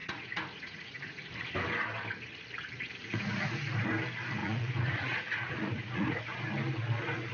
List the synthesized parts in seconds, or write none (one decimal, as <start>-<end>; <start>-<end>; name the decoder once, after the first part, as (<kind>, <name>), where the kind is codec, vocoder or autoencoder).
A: 0.0-1.3 (vocoder, Vocos); 3.0-3.6; 4.4-6.2